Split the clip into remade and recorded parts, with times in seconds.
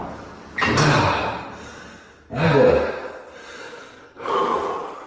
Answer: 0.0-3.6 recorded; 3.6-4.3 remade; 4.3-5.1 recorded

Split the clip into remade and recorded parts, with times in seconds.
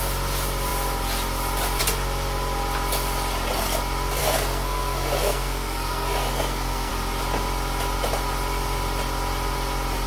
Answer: 0.0-4.2 recorded; 4.2-6.9 remade; 6.9-10.1 recorded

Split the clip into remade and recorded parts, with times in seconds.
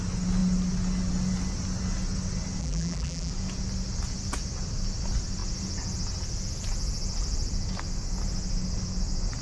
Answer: 0.0-2.6 recorded; 2.6-3.3 remade; 3.3-9.4 recorded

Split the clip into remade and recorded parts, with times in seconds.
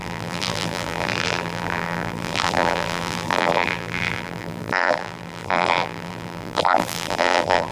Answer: 0.0-7.7 remade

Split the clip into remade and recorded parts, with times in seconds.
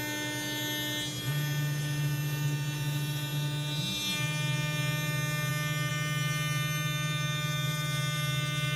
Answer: 0.0-8.8 recorded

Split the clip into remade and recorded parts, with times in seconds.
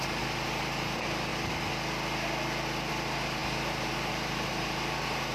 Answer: 0.0-1.3 remade; 1.3-2.9 recorded; 2.9-5.3 remade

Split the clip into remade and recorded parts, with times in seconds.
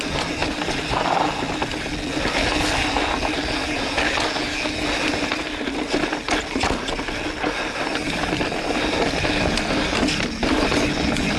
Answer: 0.0-11.4 recorded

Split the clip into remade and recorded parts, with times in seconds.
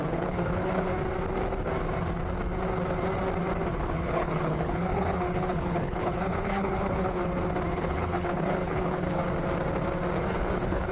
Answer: 0.0-0.9 remade; 0.9-3.7 recorded; 3.7-7.2 remade; 7.2-7.7 recorded; 7.7-9.2 remade; 9.2-10.3 recorded; 10.3-10.9 remade